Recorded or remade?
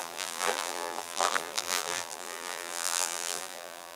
remade